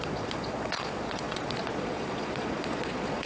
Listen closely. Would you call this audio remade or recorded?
remade